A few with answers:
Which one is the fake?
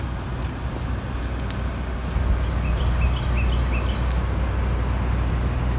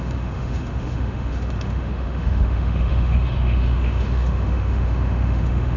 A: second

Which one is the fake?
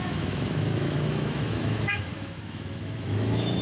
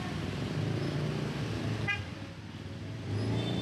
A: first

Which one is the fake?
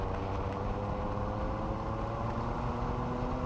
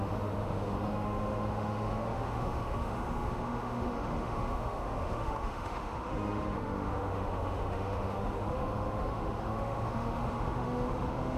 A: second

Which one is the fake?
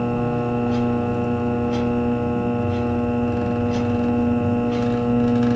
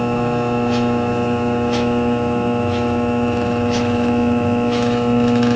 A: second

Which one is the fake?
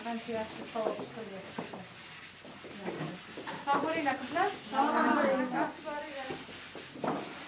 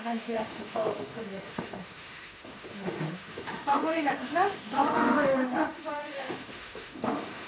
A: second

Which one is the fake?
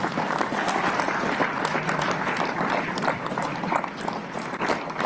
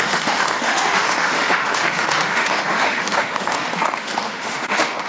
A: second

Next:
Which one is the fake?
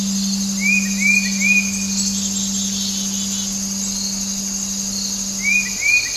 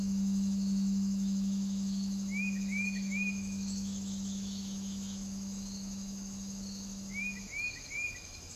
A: second